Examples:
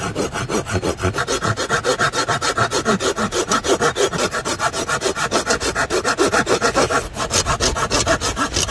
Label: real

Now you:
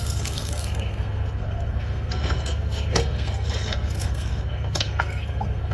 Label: fake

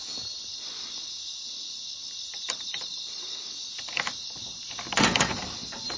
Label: real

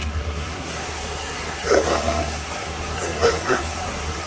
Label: fake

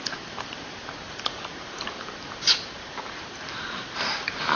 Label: fake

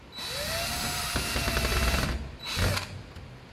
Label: real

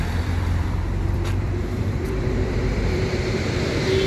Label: fake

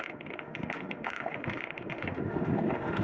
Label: fake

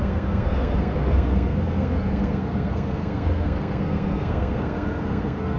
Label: fake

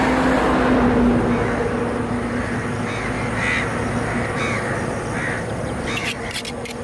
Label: real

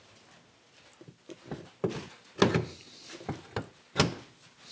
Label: real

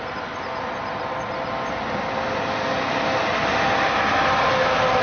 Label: real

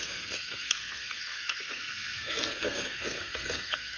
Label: fake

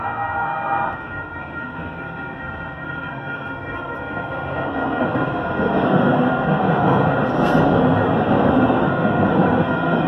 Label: fake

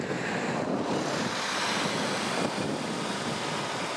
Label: real